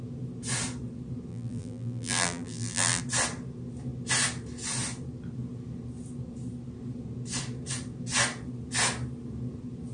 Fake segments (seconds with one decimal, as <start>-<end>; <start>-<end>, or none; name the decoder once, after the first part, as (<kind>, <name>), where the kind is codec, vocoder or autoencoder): 1.3-3.0 (vocoder, BigVGAN v2)